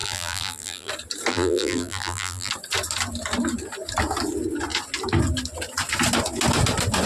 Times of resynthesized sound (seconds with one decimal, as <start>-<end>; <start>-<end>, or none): 0.0-0.9; 1.3-2.5

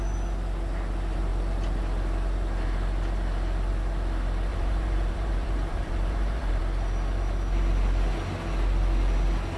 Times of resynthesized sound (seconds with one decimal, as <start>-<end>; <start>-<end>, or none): 4.5-6.6